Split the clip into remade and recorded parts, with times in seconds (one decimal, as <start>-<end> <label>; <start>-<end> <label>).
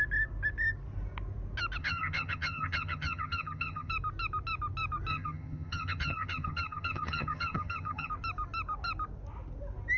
0.0-1.8 recorded; 1.8-3.9 remade; 3.9-5.1 recorded; 5.1-8.1 remade; 8.1-10.0 recorded